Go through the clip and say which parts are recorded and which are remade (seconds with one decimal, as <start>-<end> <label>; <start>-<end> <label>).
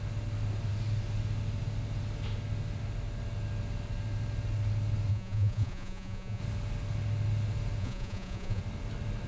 0.0-5.1 recorded; 5.1-6.4 remade; 6.4-7.8 recorded; 7.8-8.6 remade; 8.6-9.3 recorded